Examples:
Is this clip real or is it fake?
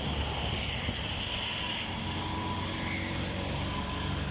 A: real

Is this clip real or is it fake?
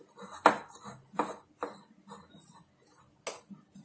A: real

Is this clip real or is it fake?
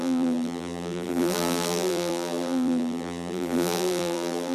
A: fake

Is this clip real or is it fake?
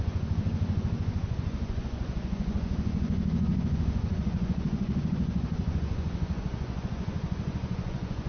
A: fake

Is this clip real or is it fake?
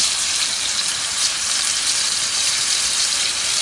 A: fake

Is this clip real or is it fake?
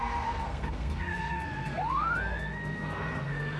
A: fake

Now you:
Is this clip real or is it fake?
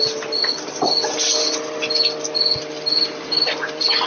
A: real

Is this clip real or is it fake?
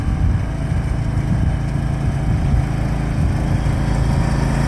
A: real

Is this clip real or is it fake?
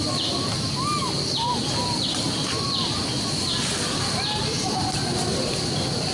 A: real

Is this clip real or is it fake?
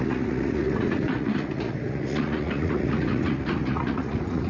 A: fake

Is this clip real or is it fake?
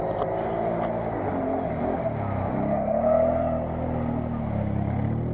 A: real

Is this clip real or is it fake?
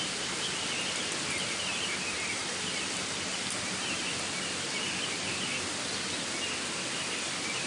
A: real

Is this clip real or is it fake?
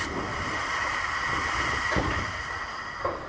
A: fake